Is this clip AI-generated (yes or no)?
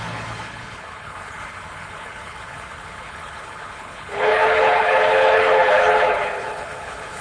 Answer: yes